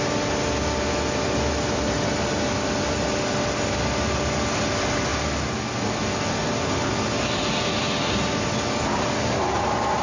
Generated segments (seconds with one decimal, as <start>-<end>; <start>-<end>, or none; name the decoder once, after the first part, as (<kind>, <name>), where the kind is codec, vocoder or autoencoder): none